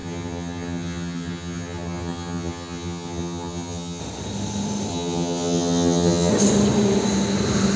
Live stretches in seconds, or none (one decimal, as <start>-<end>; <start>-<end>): 4.0-4.9; 6.3-7.8

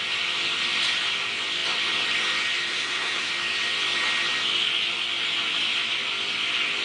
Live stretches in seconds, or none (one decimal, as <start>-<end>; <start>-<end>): 0.0-2.7; 3.3-6.8

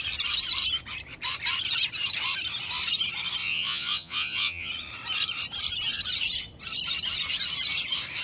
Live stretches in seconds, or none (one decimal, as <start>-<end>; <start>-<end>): 0.0-3.4; 4.7-8.2

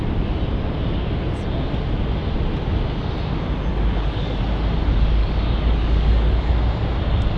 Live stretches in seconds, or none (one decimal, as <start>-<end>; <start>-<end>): 0.0-3.7; 4.4-5.2; 6.5-7.4

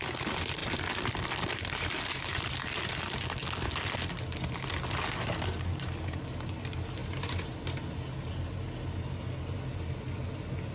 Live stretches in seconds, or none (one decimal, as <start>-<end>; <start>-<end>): 0.0-10.7

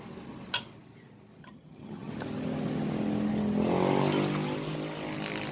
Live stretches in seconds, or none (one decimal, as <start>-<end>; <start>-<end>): 0.0-1.4; 2.1-5.5